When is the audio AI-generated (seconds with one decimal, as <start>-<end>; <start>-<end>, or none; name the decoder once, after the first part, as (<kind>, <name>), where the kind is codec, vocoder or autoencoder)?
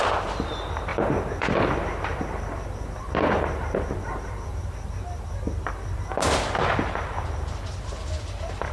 0.0-0.5 (vocoder, BigVGAN v2); 0.9-4.9